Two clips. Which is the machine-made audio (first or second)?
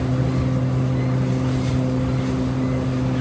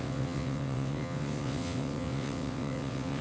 second